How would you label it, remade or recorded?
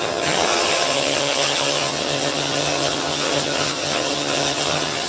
remade